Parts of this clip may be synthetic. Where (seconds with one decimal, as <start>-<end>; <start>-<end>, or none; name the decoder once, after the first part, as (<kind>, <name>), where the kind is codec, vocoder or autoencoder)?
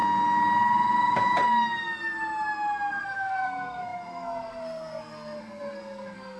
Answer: 2.9-6.4 (codec, SNAC)